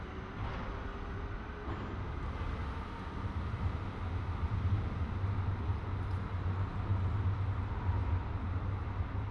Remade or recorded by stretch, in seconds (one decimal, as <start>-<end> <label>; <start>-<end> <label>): 0.0-9.3 recorded